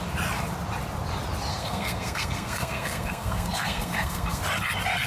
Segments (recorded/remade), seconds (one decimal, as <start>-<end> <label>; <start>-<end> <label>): 0.0-1.5 recorded; 1.5-4.4 remade; 4.4-5.1 recorded